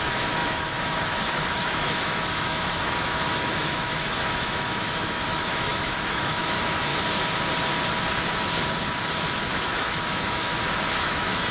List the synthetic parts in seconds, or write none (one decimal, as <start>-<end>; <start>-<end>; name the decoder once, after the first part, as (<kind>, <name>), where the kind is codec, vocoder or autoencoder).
0.0-6.9 (autoencoder, DAC-VAE); 9.5-11.5